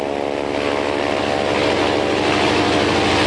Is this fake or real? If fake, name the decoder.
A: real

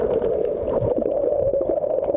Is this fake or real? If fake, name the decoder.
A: fake, vocoder, BigVGAN v2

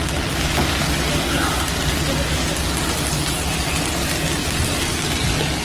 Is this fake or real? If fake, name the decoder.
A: real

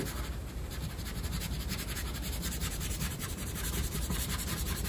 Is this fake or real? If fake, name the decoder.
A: fake, vocoder, BigVGAN v2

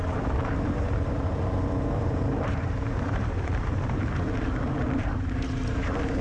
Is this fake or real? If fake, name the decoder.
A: fake, vocoder, BigVGAN v2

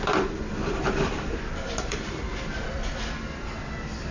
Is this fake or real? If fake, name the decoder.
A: fake, vocoder, BigVGAN v2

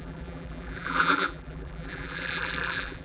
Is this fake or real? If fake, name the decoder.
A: fake, vocoder, BigVGAN v2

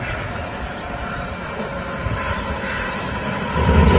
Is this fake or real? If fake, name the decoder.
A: real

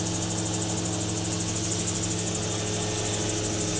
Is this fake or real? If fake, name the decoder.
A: real